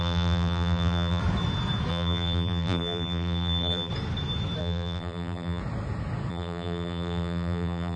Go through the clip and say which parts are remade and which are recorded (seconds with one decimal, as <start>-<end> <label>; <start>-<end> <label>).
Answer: 0.0-1.2 remade; 1.2-1.9 recorded; 1.9-3.9 remade; 3.9-4.6 recorded; 4.6-5.6 remade; 5.6-6.3 recorded; 6.3-8.0 remade